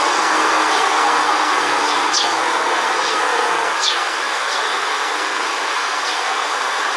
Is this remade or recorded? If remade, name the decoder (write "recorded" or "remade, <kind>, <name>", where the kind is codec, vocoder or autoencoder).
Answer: remade, codec, SNAC